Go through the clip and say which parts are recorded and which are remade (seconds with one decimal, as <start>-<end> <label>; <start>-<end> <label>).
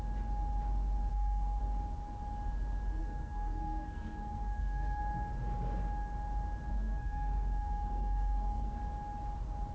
0.0-1.1 recorded; 1.1-1.6 remade; 1.6-3.0 recorded; 3.0-5.0 remade; 5.0-6.7 recorded; 6.7-8.8 remade; 8.8-9.7 recorded